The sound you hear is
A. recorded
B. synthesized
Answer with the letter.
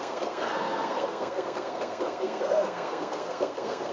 B